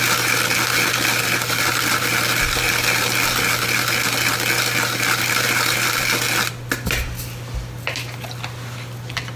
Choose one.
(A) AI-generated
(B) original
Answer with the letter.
B